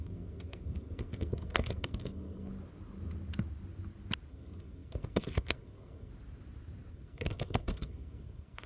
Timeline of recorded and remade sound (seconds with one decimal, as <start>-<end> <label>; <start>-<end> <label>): 0.0-2.5 remade; 2.5-4.3 recorded; 4.3-6.1 remade; 6.1-6.9 recorded; 6.9-8.7 remade